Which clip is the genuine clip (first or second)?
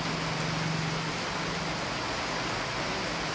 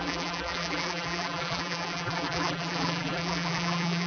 first